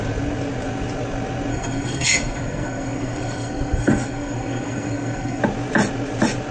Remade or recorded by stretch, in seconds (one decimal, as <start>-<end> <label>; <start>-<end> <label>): 0.0-1.5 recorded; 1.5-5.4 remade; 5.4-6.5 recorded